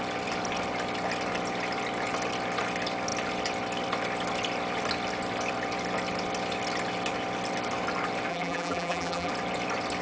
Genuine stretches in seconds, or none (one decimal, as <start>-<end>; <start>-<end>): 0.0-8.3; 9.3-10.0